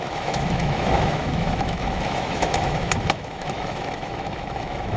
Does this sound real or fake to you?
fake